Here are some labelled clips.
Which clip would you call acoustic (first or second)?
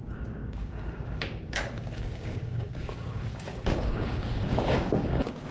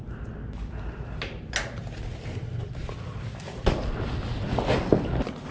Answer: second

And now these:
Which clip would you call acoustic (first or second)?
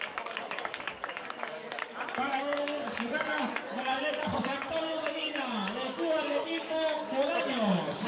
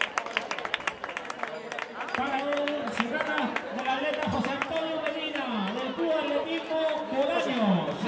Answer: second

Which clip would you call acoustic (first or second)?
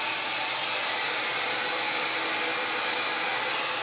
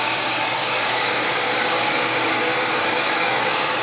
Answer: first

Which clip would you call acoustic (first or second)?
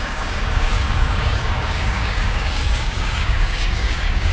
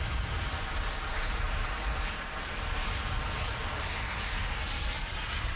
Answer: second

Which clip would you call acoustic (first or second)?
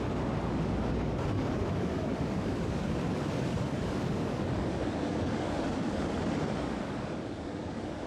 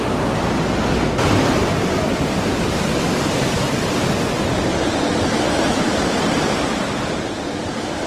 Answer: second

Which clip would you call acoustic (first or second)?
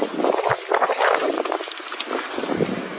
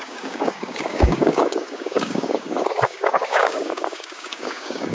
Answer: first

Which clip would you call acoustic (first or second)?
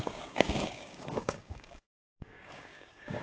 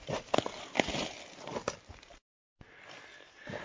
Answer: second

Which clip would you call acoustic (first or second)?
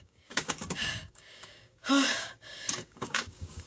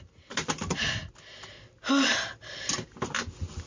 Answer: second